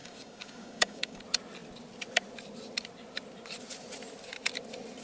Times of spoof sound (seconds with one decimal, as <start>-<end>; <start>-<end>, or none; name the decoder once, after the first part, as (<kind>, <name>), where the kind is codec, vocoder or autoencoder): 0.0-1.2 (codec, DAC)